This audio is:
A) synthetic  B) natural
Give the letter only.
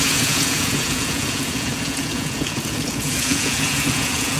A